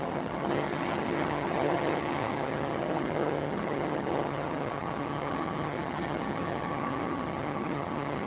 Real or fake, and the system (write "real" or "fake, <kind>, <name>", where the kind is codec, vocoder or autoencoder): fake, vocoder, HiFi-GAN